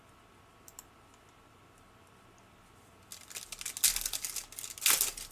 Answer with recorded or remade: recorded